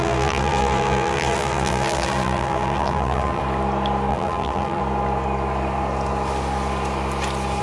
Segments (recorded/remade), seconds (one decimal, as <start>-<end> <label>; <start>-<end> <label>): 0.0-3.4 remade; 3.4-4.1 recorded; 4.1-4.8 remade; 4.8-7.6 recorded